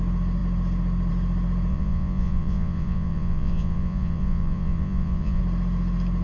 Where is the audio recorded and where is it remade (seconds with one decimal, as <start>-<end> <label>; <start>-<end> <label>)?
0.0-1.7 recorded; 1.7-5.4 remade; 5.4-6.2 recorded